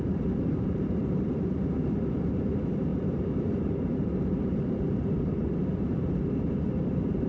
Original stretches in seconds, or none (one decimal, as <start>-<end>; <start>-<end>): none